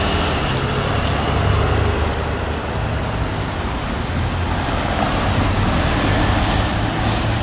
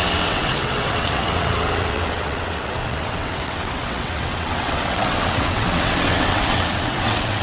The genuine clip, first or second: first